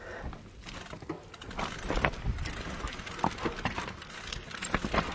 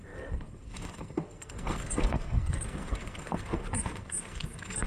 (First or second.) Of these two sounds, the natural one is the first